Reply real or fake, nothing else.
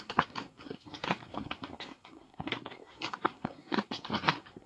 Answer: fake